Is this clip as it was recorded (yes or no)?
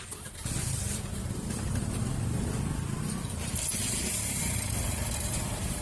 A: yes